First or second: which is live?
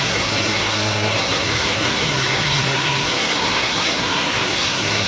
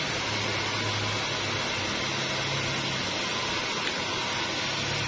second